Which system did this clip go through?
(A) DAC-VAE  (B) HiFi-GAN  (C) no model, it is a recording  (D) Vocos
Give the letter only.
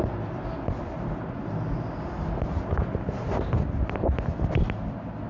C